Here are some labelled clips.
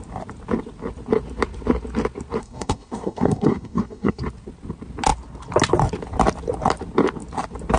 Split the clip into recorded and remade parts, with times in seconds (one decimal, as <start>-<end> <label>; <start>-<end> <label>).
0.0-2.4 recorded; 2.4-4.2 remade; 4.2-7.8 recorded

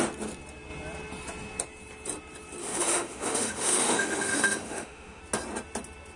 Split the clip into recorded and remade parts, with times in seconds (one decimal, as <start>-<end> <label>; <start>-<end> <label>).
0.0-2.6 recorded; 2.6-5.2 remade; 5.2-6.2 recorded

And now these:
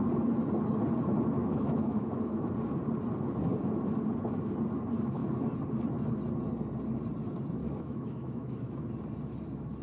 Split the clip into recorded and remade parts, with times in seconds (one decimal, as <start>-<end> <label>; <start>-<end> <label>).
0.0-1.4 recorded; 1.4-2.5 remade; 2.5-7.6 recorded; 7.6-8.9 remade; 8.9-9.8 recorded